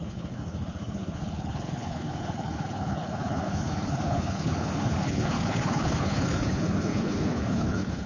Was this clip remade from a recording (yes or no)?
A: yes